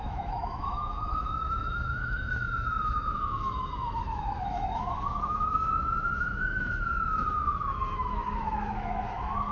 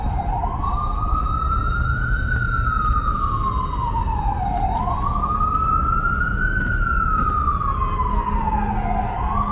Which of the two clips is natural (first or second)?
second